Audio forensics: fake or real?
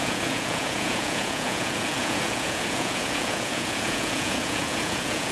fake